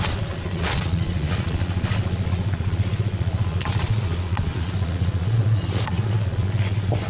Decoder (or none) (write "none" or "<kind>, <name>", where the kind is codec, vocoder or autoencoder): vocoder, Vocos